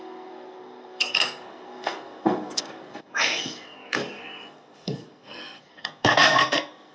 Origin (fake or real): fake